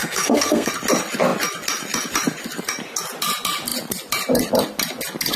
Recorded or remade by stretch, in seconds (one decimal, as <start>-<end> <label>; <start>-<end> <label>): 0.0-0.7 remade; 0.7-5.4 recorded